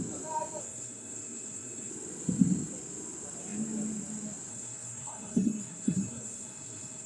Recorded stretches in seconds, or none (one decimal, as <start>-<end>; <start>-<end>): 0.0-0.6; 1.9-4.5